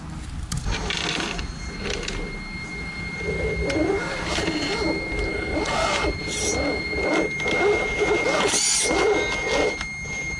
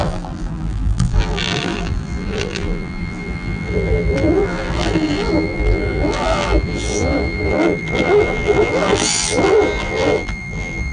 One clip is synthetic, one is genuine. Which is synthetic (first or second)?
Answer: second